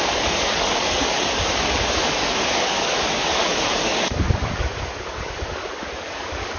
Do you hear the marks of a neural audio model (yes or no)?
yes